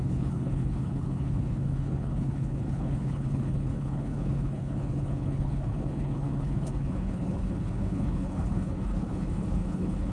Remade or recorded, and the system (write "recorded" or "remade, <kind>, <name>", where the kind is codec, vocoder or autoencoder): remade, codec, HILCodec